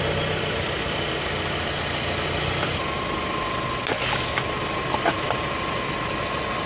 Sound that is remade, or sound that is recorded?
recorded